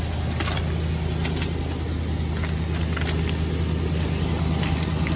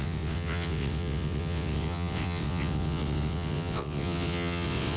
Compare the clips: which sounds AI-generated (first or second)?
second